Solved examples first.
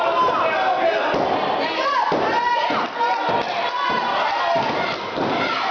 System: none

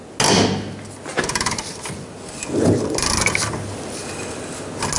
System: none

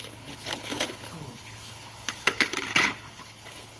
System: codec, HILCodec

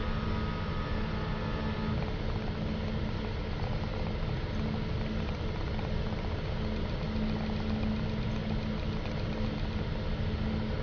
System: none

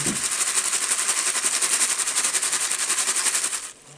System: none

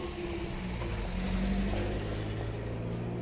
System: none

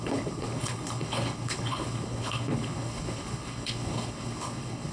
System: codec, HILCodec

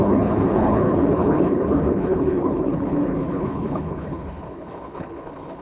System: codec, HILCodec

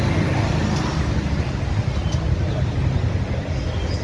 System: none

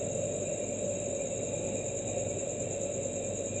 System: none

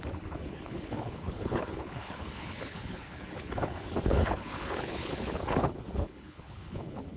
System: codec, HILCodec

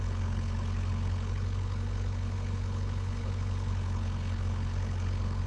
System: codec, HILCodec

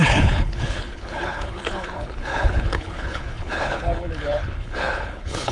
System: codec, HILCodec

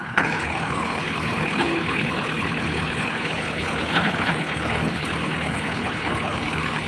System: codec, HILCodec